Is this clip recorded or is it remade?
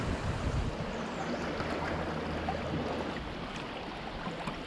recorded